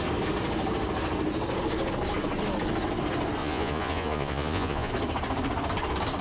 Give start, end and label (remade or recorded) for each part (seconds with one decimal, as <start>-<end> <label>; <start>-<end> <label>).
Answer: 0.0-3.4 recorded; 3.4-4.9 remade; 4.9-6.2 recorded